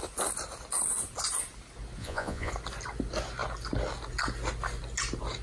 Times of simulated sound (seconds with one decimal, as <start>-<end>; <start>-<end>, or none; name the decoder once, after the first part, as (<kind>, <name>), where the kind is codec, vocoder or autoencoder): 2.0-2.5 (vocoder, Vocos)